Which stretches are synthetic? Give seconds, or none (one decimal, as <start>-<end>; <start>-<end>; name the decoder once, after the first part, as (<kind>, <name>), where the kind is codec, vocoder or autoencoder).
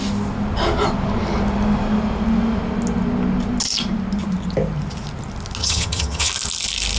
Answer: 5.6-6.3 (vocoder, HiFi-GAN)